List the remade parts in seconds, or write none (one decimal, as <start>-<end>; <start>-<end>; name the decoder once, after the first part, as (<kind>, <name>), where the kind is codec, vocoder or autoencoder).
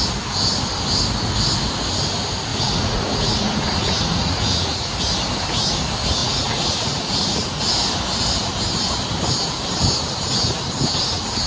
2.5-5.0 (vocoder, Vocos); 6.2-7.6